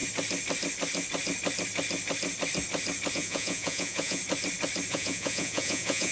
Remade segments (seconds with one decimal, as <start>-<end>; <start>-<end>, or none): 3.1-4.2; 4.9-6.1